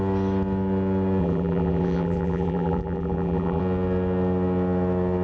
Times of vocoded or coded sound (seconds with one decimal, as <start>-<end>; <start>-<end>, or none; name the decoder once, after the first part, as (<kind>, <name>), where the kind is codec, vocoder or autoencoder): 1.2-3.6 (vocoder, BigVGAN v2)